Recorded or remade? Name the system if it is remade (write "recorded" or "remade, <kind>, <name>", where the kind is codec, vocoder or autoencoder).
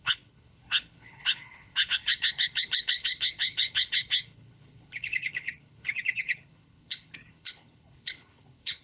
remade, codec, HILCodec